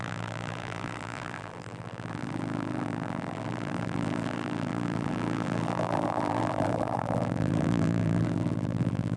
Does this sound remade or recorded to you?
remade